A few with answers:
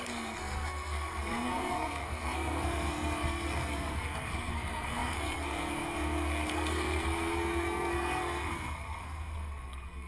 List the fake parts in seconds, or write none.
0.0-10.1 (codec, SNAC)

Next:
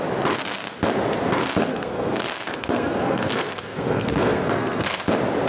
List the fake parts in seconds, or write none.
1.7-5.0 (codec, SNAC)